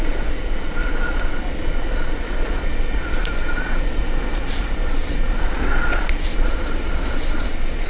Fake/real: fake